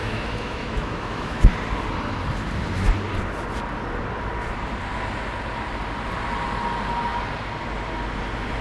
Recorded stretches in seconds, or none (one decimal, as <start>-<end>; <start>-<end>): 1.5-8.6